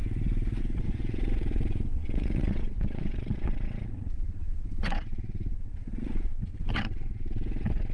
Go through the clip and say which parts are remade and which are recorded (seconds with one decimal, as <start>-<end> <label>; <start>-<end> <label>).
0.0-0.6 recorded; 0.6-7.9 remade